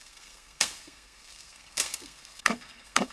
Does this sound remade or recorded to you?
remade